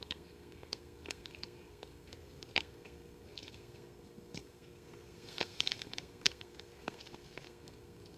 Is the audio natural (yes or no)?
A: no